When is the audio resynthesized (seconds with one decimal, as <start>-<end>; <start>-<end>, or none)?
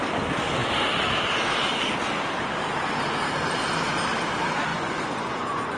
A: 4.7-5.8